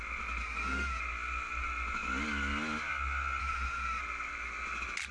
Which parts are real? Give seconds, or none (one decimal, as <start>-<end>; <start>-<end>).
0.0-0.4; 1.0-3.4; 4.0-5.1